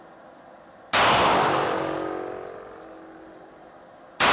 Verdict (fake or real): real